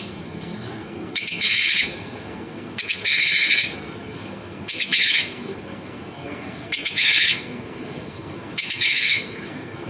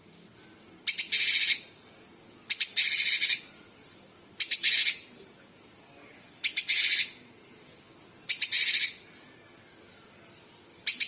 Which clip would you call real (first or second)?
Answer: second